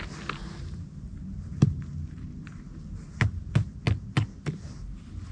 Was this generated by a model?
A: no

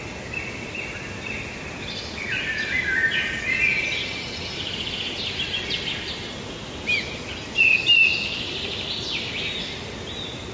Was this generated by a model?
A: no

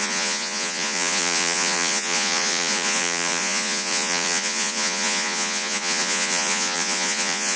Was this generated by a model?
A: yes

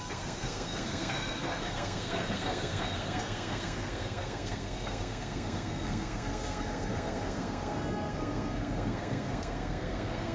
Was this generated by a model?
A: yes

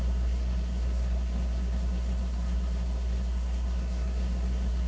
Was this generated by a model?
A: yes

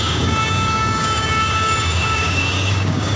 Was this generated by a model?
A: yes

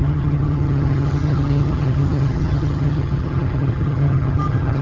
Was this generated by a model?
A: yes